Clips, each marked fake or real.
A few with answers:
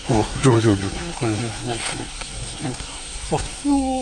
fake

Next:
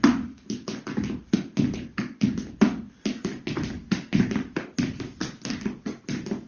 real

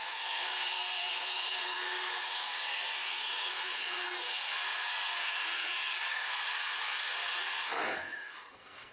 fake